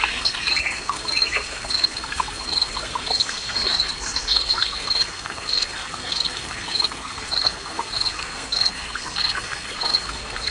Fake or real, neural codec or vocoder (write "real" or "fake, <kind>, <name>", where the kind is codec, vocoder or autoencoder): fake, codec, SNAC